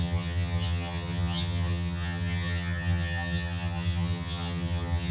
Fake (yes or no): yes